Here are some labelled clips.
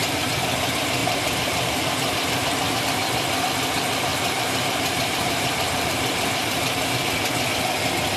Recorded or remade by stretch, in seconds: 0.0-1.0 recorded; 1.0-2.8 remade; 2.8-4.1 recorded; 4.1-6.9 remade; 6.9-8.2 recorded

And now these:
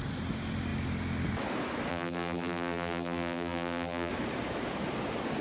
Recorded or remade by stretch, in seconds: 0.0-1.9 recorded; 1.9-4.1 remade; 4.1-5.4 recorded

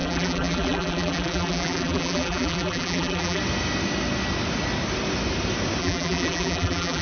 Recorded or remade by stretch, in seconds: 0.0-3.4 remade; 3.4-5.8 recorded; 5.8-7.0 remade